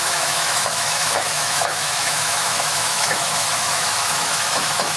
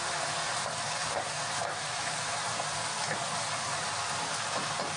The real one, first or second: second